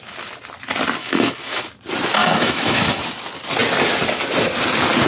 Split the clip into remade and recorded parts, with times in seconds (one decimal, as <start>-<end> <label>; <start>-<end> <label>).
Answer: 0.0-1.0 recorded; 1.0-1.7 remade; 1.7-2.2 recorded; 2.2-3.0 remade; 3.0-5.1 recorded